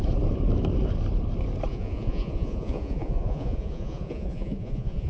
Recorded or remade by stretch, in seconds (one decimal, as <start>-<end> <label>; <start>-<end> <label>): 0.0-1.7 recorded; 1.7-5.1 remade